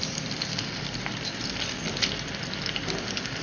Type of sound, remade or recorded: recorded